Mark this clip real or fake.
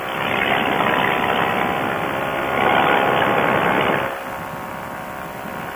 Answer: real